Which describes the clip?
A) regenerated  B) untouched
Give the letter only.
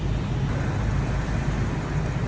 B